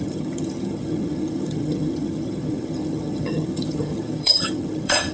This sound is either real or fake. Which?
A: fake